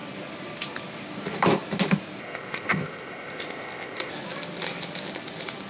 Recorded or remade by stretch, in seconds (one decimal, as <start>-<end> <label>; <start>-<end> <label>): 0.0-2.2 recorded; 2.2-4.1 remade; 4.1-5.7 recorded